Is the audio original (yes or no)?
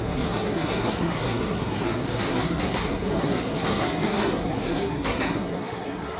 no